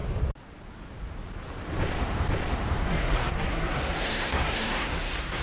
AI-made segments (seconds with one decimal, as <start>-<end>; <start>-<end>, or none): 2.8-5.4